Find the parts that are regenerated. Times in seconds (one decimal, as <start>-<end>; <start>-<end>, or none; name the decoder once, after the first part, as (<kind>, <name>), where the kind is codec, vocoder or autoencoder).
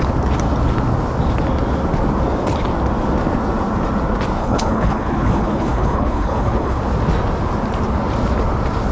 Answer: 4.4-6.8 (codec, HILCodec)